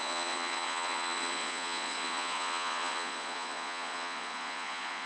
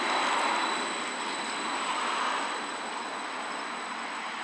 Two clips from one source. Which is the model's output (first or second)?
first